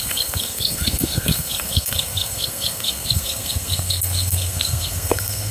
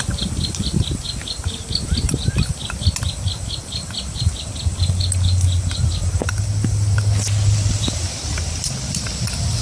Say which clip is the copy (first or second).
first